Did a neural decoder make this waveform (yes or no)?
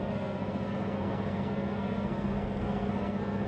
yes